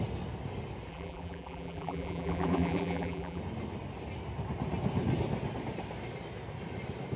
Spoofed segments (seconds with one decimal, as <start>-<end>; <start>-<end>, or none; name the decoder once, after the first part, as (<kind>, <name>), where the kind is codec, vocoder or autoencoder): 0.9-3.4 (vocoder, BigVGAN v2)